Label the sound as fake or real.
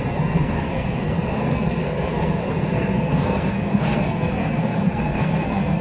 fake